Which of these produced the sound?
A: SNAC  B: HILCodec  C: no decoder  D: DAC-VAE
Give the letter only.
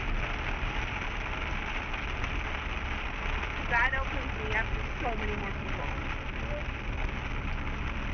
C